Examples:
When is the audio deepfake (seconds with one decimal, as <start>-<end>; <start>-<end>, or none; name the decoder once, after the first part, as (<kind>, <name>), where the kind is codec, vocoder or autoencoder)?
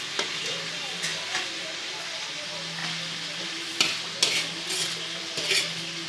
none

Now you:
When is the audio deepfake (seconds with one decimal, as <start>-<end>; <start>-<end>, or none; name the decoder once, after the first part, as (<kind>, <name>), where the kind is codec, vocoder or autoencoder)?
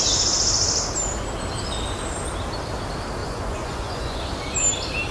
3.2-4.2 (vocoder, Vocos)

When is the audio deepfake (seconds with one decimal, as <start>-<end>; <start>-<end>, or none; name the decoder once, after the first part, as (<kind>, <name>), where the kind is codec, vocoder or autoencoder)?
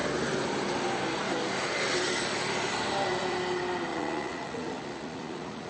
3.9-5.7 (vocoder, Vocos)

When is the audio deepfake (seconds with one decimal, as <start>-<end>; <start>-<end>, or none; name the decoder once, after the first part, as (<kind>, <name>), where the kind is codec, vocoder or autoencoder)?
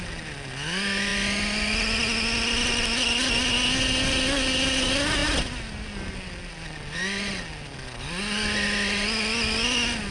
none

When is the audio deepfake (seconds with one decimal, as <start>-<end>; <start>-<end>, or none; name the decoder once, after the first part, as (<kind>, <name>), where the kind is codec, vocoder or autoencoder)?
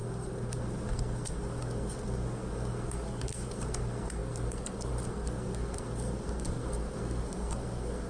0.0-8.1 (codec, SNAC)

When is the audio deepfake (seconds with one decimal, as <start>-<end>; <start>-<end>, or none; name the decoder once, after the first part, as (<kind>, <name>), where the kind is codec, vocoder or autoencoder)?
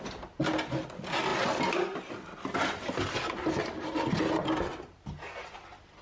none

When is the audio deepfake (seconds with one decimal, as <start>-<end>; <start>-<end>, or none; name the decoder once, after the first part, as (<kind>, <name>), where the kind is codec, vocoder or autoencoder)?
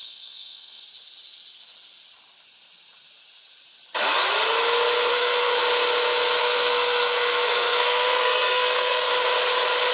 0.0-0.8 (codec, SNAC); 5.1-5.6; 6.4-9.1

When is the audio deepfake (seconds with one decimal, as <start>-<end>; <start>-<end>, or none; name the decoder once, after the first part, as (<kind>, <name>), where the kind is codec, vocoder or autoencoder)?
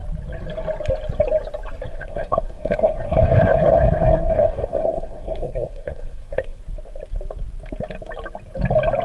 1.9-6.6 (codec, SNAC)